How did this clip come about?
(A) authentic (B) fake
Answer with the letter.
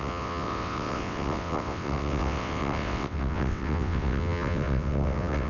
B